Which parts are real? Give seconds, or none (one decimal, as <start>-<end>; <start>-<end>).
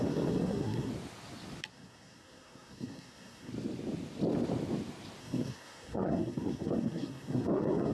0.9-1.7; 3.5-5.2